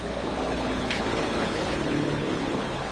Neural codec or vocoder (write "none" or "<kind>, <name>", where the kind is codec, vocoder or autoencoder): codec, HILCodec